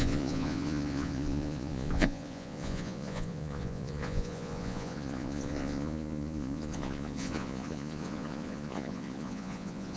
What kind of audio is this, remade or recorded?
remade